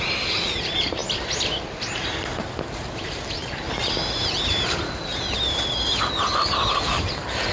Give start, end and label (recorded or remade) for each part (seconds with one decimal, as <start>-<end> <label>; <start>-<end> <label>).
0.0-7.5 recorded